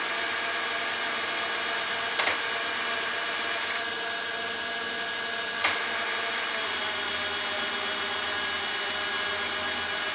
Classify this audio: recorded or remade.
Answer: recorded